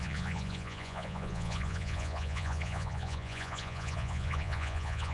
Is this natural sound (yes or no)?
no